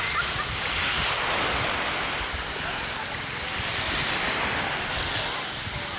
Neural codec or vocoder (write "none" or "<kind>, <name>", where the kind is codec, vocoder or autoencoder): none